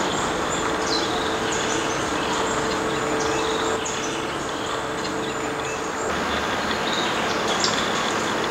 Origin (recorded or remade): recorded